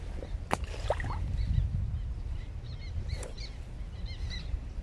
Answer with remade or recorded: recorded